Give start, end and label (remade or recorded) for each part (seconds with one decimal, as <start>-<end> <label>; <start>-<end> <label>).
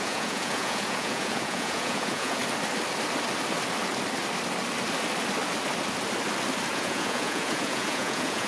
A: 0.0-2.4 remade; 2.4-6.7 recorded; 6.7-8.5 remade